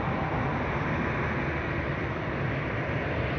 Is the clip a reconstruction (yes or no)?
no